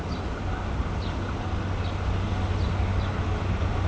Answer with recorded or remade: recorded